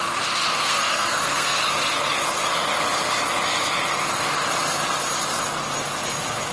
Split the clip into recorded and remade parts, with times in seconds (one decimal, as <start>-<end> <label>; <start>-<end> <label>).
0.0-0.5 recorded; 0.5-1.6 remade; 1.6-6.5 recorded